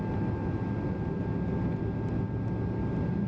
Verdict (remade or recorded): recorded